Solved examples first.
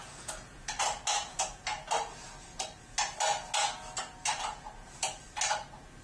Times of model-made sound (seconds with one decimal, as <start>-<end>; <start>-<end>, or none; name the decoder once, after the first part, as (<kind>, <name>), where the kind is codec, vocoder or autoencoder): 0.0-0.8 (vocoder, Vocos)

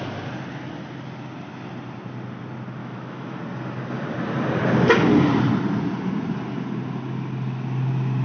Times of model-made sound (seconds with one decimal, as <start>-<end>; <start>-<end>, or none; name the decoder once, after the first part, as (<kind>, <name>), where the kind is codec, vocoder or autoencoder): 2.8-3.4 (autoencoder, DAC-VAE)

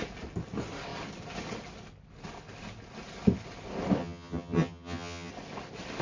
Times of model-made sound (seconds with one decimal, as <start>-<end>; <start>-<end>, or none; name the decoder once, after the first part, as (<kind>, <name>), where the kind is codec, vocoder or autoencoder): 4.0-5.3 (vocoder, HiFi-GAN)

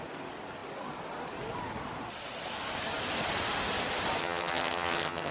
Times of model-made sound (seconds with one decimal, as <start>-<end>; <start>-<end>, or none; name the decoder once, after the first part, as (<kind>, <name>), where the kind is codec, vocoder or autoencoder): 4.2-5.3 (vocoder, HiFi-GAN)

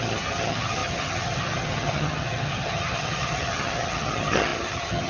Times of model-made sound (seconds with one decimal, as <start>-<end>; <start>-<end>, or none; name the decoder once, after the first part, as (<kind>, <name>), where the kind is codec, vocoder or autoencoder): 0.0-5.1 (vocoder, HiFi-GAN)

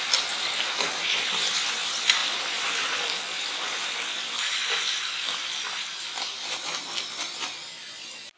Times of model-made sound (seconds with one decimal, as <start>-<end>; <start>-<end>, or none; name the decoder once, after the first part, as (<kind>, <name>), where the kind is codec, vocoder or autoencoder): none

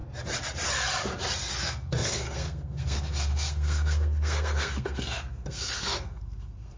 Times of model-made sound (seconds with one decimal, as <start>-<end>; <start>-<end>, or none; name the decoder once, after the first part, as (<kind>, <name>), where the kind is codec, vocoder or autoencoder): 1.5-6.8 (codec, SNAC)